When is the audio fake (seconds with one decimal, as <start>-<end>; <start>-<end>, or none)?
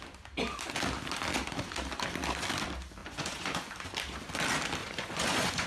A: 3.0-3.7; 4.8-5.7